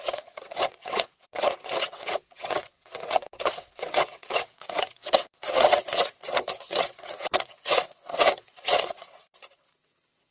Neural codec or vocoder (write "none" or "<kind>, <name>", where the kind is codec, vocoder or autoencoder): vocoder, WaveNeXt